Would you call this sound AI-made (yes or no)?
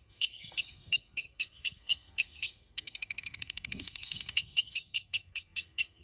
yes